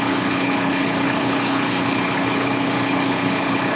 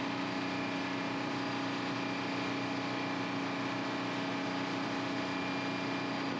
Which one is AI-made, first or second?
first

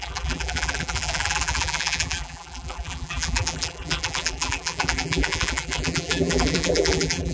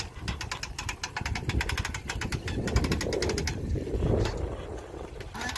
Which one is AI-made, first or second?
first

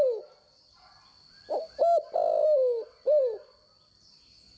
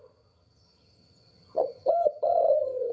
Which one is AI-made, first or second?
second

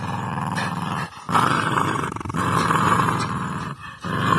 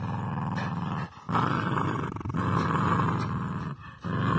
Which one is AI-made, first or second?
first